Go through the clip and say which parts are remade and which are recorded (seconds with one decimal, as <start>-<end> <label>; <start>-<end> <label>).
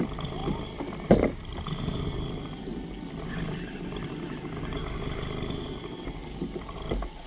0.0-7.3 recorded